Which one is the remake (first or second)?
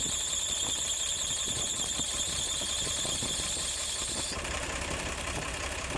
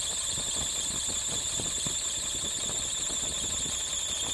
first